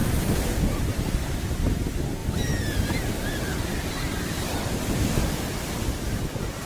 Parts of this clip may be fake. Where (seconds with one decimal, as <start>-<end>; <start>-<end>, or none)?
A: 0.0-1.1; 2.2-4.9